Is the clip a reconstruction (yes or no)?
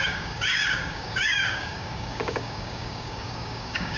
yes